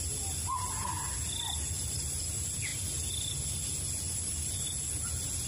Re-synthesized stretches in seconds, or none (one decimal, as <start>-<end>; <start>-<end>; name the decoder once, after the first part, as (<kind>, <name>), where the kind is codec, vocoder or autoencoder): none